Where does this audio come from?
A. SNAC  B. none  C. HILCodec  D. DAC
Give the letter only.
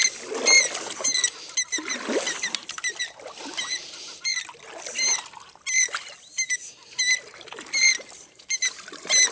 B